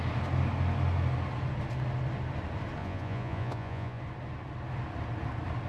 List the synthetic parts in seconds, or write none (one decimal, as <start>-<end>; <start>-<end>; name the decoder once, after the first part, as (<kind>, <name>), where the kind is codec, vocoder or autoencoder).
2.8-4.0 (vocoder, Vocos)